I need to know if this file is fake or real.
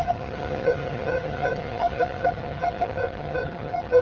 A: fake